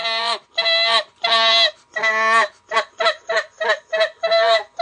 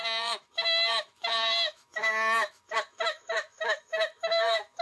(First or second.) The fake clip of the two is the second